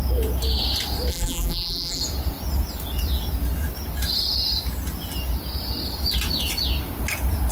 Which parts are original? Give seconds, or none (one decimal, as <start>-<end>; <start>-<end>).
0.0-1.1; 2.0-7.5